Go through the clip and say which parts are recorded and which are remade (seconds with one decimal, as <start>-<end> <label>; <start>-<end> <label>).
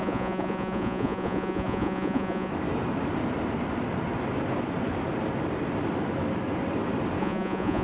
0.0-2.5 remade; 2.5-7.2 recorded; 7.2-7.8 remade